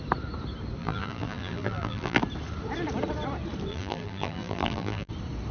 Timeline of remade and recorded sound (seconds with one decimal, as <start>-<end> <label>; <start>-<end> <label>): 0.0-0.8 recorded; 0.8-2.2 remade; 2.2-3.7 recorded; 3.7-5.1 remade; 5.1-5.5 recorded